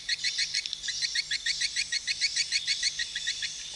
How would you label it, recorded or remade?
recorded